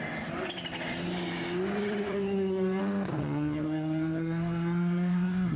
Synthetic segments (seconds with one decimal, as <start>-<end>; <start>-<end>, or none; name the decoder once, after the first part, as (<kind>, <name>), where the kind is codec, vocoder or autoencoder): 2.1-2.8 (codec, SNAC); 3.2-5.6